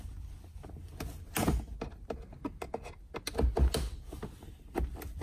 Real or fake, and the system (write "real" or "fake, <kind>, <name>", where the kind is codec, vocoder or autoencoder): real